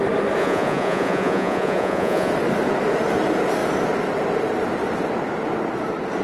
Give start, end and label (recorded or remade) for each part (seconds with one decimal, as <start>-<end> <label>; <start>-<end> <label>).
0.0-0.4 recorded; 0.4-2.3 remade; 2.3-6.2 recorded